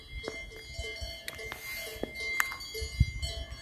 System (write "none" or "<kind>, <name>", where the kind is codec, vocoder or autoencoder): none